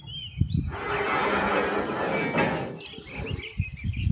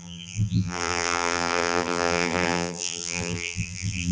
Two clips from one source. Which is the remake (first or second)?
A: second